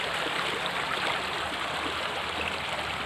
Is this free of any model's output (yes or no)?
no